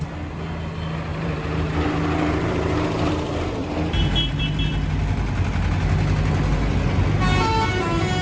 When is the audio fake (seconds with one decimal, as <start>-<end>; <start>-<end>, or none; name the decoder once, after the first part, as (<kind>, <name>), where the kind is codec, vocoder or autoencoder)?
1.1-3.1 (vocoder, BigVGAN v2)